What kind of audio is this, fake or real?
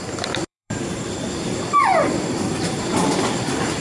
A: fake